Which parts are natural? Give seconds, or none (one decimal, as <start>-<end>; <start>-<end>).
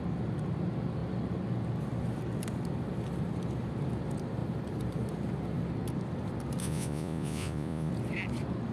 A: 0.0-6.6; 7.9-8.7